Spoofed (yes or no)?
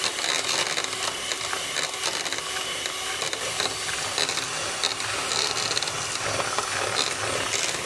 no